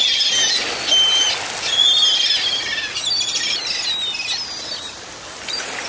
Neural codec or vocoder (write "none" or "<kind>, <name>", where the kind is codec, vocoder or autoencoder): none